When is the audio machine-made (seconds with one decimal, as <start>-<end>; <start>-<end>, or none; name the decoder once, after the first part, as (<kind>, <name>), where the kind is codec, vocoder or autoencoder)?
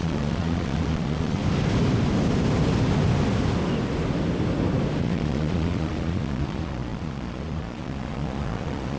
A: 0.0-1.4 (vocoder, Vocos); 5.0-9.0